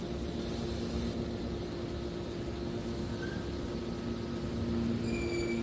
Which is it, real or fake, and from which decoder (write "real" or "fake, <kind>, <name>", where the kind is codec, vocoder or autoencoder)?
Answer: real